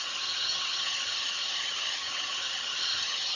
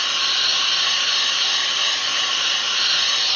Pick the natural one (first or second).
second